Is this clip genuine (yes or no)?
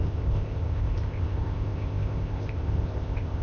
no